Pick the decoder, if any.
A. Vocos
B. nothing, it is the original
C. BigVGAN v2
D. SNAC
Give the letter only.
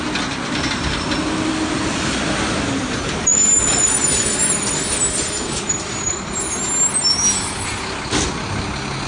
B